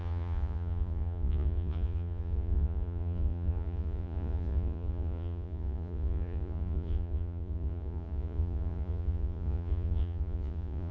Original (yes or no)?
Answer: no